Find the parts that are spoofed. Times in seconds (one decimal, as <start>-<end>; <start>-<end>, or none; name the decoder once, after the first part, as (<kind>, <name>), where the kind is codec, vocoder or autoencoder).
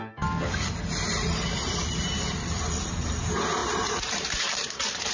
3.6-5.1 (vocoder, BigVGAN v2)